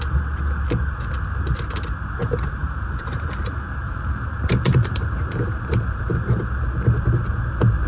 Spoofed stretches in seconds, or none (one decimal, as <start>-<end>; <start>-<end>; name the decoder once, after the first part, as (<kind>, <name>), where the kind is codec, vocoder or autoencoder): 2.2-6.4 (vocoder, BigVGAN v2)